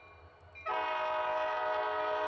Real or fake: real